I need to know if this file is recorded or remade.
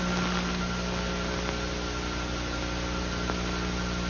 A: recorded